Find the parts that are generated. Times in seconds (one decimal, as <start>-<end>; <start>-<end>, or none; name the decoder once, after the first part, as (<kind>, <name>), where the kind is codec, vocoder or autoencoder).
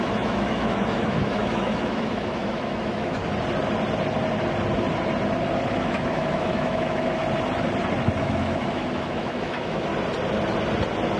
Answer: 0.0-3.2 (autoencoder, DAC-VAE); 5.7-7.2; 8.2-9.9